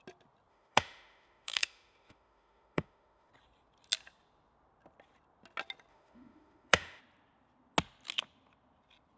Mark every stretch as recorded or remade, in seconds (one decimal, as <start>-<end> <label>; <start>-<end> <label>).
0.0-0.5 recorded; 0.5-3.3 remade; 3.3-5.9 recorded; 5.9-7.0 remade; 7.0-9.2 recorded